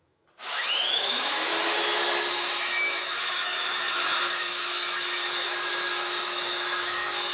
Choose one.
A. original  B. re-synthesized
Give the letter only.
B